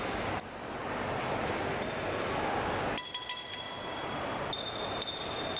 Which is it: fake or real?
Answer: real